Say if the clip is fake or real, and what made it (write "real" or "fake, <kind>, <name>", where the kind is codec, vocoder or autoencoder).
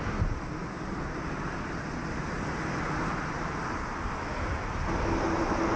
real